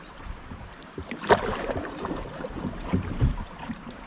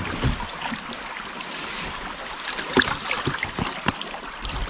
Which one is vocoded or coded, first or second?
first